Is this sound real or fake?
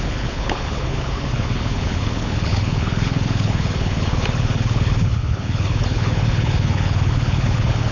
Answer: fake